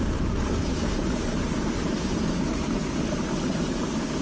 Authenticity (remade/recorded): remade